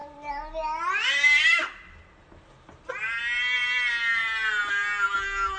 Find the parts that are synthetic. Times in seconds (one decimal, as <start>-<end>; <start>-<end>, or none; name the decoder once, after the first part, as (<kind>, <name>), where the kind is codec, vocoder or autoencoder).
none